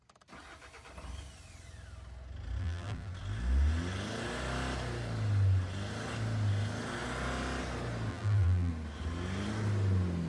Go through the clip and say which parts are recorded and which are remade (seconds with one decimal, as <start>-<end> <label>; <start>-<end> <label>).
0.0-2.6 recorded; 2.6-3.1 remade; 3.1-8.1 recorded; 8.1-8.7 remade; 8.7-10.3 recorded